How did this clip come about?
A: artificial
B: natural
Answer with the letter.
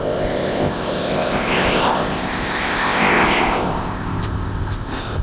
A